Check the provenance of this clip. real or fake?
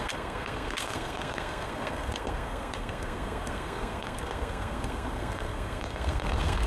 fake